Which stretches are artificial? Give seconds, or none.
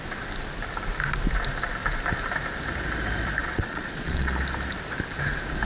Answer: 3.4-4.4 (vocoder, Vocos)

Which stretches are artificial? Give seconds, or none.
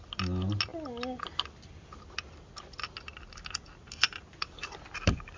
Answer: none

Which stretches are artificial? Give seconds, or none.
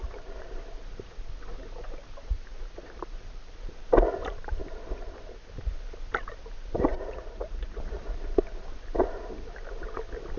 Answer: 6.9-7.8 (vocoder, Vocos)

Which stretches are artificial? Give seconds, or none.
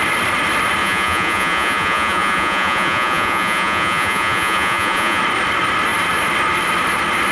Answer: 0.8-5.2 (vocoder, Vocos)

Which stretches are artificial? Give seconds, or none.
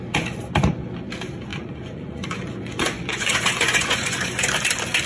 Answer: 1.5-4.6 (vocoder, Vocos)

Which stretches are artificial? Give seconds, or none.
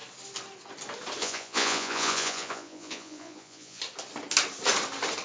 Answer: 1.2-3.8 (vocoder, Vocos)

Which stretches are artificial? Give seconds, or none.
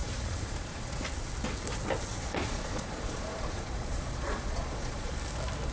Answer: 0.0-1.0 (vocoder, Vocos); 2.2-5.1